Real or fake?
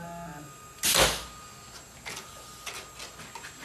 real